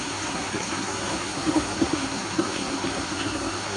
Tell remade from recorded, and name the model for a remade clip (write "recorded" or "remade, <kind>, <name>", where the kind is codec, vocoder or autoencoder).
remade, codec, SNAC